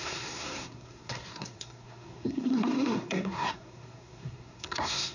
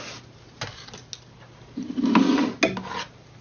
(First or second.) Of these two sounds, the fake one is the first